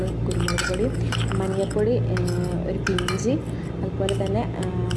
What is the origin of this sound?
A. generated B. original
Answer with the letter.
B